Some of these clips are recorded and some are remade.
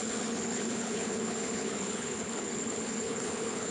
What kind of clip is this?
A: remade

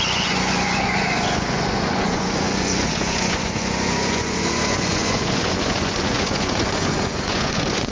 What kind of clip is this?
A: remade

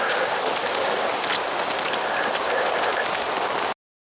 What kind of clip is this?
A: recorded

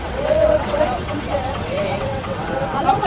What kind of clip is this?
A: remade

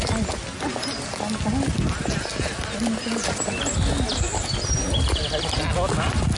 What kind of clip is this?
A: recorded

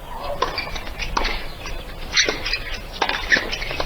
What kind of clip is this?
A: recorded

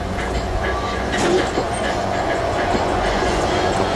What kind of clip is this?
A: remade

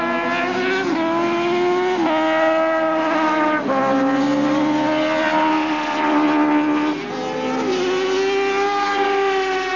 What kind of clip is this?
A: recorded